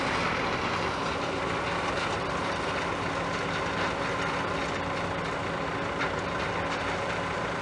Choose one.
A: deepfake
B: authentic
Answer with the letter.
B